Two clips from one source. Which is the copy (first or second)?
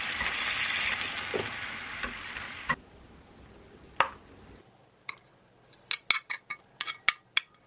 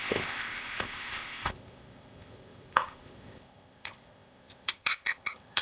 second